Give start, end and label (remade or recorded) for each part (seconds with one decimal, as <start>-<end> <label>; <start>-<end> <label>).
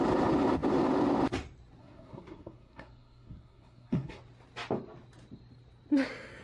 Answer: 0.0-1.8 recorded; 1.8-4.2 remade; 4.2-6.4 recorded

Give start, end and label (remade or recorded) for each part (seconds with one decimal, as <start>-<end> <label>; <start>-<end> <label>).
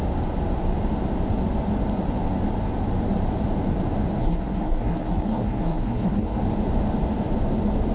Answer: 0.0-4.2 recorded; 4.2-6.4 remade; 6.4-7.9 recorded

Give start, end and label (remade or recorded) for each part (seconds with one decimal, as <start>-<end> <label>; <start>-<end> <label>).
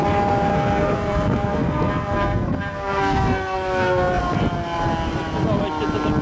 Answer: 0.0-0.5 recorded; 0.5-4.2 remade; 4.2-6.2 recorded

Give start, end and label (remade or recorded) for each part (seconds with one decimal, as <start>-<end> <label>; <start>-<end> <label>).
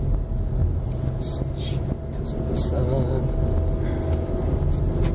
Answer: 0.0-5.1 recorded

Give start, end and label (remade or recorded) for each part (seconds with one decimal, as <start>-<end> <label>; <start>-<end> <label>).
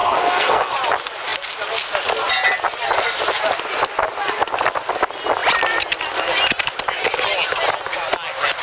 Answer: 0.0-0.7 remade; 0.7-8.6 recorded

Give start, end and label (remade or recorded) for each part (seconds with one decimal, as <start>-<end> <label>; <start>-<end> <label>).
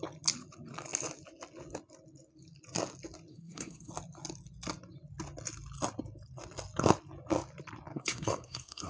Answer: 0.0-3.3 recorded; 3.3-3.9 remade; 3.9-7.9 recorded; 7.9-8.9 remade